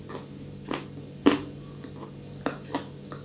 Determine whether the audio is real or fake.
real